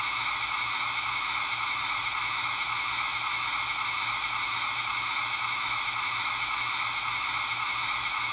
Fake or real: fake